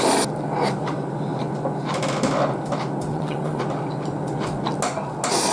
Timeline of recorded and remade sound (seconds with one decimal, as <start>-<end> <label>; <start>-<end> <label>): 0.0-3.1 recorded; 3.1-3.6 remade; 3.6-5.5 recorded